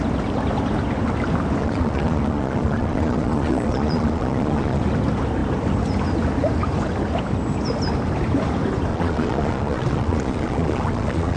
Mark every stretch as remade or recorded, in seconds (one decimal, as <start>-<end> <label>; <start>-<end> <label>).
0.0-1.6 recorded; 1.6-4.8 remade; 4.8-8.9 recorded; 8.9-11.4 remade